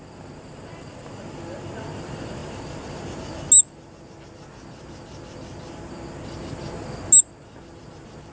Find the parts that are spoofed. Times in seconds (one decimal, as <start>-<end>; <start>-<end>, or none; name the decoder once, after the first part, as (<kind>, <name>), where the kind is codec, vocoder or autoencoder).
none